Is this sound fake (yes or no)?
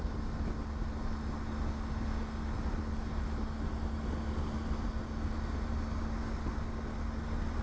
no